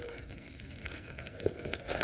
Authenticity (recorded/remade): remade